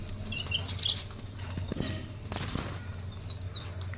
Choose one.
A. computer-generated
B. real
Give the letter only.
B